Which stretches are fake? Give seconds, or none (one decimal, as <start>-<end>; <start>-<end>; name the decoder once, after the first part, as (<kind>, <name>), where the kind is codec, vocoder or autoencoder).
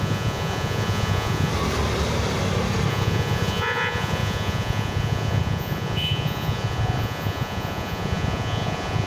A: 0.0-1.5 (vocoder, Vocos); 2.9-9.1